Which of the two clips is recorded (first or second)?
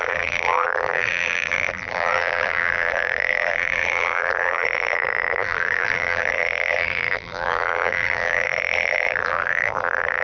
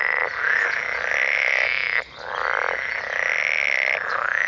second